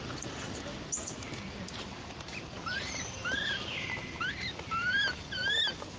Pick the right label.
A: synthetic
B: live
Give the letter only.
B